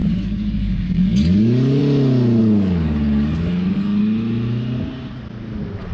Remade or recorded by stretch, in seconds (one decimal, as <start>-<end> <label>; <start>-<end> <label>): 0.0-1.8 remade; 1.8-2.4 recorded; 2.4-4.0 remade; 4.0-5.9 recorded